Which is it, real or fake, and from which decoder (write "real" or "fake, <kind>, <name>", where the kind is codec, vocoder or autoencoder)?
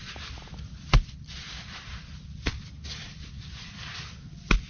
real